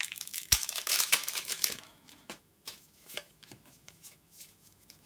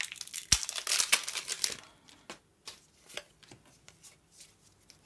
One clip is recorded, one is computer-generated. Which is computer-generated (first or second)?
first